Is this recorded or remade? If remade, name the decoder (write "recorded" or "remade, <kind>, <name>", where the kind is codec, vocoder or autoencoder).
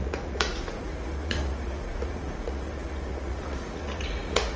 remade, vocoder, Vocos